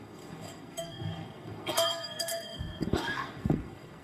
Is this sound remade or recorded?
remade